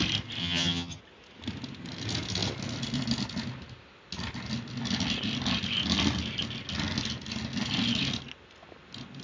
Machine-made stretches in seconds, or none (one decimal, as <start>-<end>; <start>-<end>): 0.4-1.0

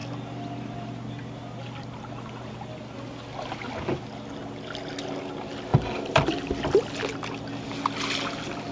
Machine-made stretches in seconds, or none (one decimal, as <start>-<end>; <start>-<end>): none